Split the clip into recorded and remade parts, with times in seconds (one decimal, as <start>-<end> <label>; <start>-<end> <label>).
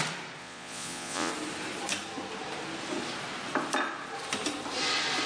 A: 0.0-0.4 recorded; 0.4-1.3 remade; 1.3-5.3 recorded